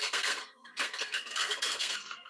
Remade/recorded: remade